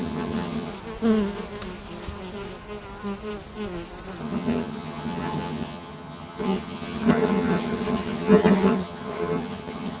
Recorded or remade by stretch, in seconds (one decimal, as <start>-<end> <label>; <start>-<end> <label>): 0.0-0.7 remade; 0.7-4.2 recorded; 4.2-10.0 remade